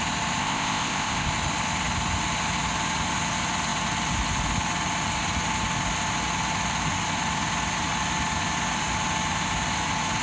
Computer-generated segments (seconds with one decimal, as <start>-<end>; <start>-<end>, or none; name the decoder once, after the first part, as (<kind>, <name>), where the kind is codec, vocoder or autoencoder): 0.4-1.3 (codec, ZipCodec)